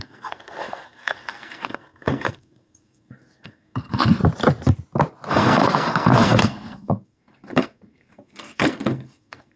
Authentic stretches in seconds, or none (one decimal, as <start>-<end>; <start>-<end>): 4.2-5.3